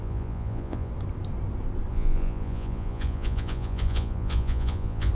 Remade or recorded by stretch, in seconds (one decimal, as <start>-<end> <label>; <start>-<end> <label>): 0.0-0.9 remade; 0.9-1.9 recorded; 1.9-5.1 remade